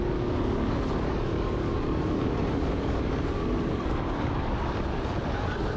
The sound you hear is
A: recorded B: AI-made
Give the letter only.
B